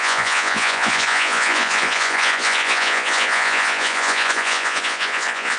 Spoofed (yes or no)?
yes